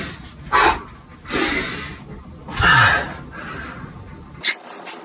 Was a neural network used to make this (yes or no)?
no